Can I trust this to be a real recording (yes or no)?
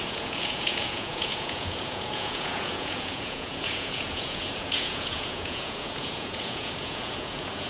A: no